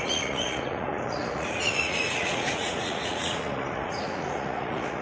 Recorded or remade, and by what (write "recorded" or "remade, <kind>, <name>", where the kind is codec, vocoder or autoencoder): remade, vocoder, Vocos